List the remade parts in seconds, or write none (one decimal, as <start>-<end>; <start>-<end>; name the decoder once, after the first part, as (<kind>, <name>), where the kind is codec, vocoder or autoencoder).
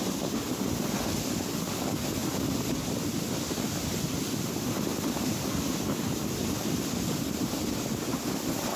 2.2-3.8 (vocoder, BigVGAN v2); 6.6-7.5